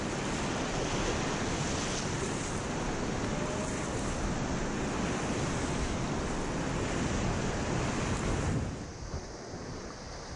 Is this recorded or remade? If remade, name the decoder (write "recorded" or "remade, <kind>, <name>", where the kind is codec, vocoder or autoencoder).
recorded